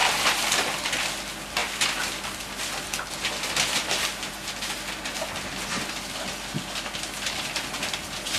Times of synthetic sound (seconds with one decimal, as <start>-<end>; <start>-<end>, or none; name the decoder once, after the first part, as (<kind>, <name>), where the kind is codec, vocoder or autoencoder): 0.0-0.9 (vocoder, BigVGAN v2)